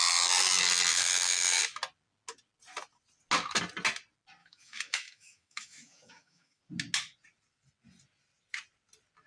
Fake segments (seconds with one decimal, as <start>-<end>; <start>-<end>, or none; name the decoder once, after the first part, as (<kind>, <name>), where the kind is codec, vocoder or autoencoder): 0.9-1.6 (autoencoder, DAC-VAE); 4.4-6.6